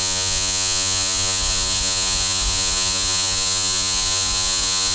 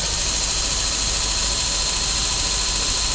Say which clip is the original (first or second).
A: second